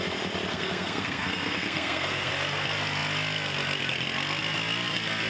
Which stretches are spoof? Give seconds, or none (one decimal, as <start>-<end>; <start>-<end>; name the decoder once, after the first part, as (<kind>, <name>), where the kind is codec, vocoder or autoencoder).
0.5-2.3 (codec, SNAC)